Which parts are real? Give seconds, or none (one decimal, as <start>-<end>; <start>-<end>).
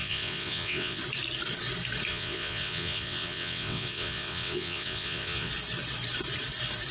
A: 1.0-2.1; 5.5-6.9